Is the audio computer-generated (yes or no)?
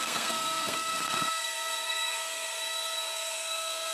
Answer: yes